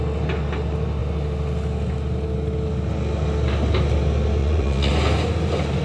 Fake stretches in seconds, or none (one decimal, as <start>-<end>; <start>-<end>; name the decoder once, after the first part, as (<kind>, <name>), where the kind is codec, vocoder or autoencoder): 4.4-4.9 (vocoder, Vocos)